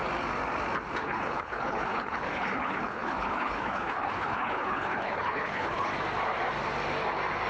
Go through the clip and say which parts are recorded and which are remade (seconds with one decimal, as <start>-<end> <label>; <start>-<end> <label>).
0.0-1.0 recorded; 1.0-5.9 remade; 5.9-7.5 recorded